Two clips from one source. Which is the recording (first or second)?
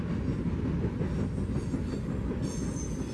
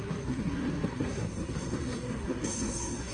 first